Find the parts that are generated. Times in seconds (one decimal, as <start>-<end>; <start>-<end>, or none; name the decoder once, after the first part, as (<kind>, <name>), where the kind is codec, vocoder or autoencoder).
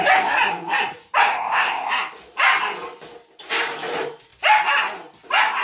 1.3-1.9 (codec, ZipCodec)